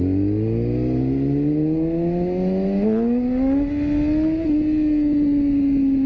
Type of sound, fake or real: real